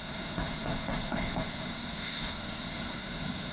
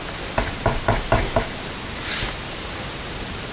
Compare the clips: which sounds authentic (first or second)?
second